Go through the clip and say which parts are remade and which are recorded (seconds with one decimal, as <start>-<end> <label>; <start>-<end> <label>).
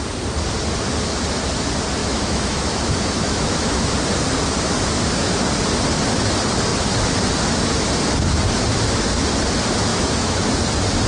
0.0-2.0 recorded; 2.0-3.9 remade; 3.9-9.9 recorded; 9.9-10.5 remade; 10.5-11.1 recorded